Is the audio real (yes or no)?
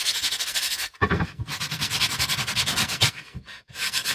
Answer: no